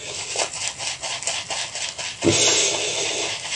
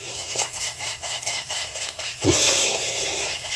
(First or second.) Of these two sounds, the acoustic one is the first